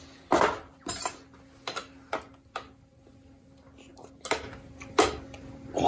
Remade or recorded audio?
recorded